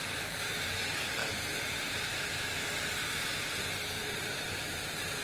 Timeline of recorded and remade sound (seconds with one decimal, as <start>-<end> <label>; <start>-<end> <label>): 0.0-1.2 remade; 1.2-3.9 recorded; 3.9-5.2 remade